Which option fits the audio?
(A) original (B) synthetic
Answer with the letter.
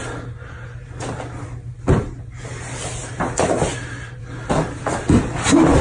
A